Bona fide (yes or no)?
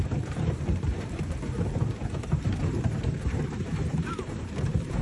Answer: no